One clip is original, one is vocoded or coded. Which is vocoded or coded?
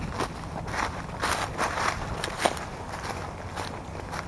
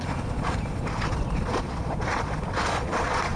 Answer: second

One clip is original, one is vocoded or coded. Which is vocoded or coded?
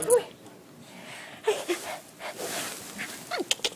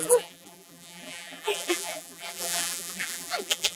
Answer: second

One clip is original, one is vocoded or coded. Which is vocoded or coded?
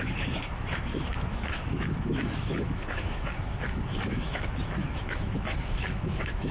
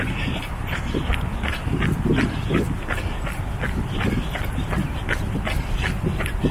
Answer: first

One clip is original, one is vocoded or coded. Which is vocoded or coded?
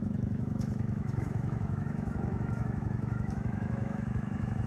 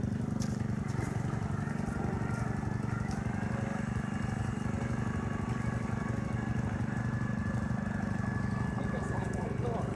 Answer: first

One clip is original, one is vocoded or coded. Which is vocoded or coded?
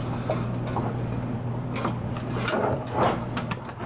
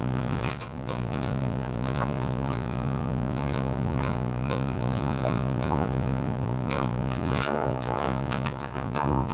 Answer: second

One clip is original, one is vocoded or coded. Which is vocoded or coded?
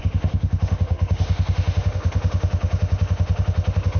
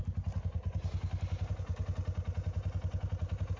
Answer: first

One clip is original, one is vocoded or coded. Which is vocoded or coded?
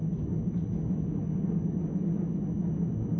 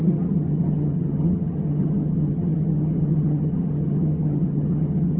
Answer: second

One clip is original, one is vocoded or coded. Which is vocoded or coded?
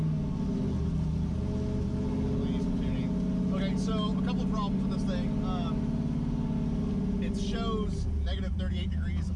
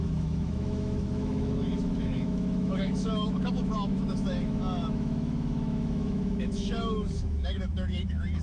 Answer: second